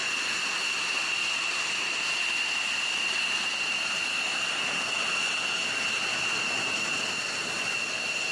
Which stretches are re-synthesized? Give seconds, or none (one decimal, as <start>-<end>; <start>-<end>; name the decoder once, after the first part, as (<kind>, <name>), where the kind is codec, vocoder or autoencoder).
none